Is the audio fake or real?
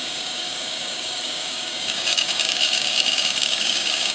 fake